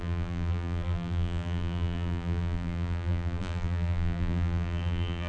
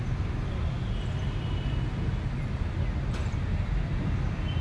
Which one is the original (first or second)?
second